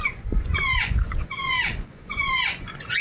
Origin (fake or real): fake